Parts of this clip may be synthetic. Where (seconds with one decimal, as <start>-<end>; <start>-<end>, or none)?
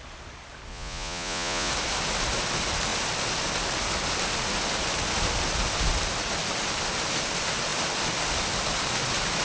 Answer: 0.7-1.7